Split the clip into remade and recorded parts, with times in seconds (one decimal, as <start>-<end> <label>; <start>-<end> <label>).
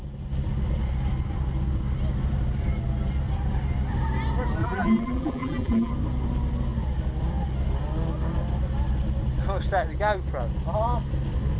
0.0-4.6 recorded; 4.6-5.9 remade; 5.9-11.6 recorded